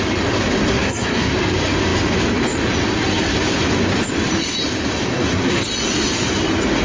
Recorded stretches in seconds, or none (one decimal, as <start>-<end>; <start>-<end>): 0.0-0.7; 1.3-5.0; 5.6-6.8